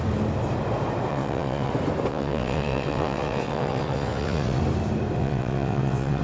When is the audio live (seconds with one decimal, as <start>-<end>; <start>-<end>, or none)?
0.0-1.1; 1.7-2.1; 4.6-5.2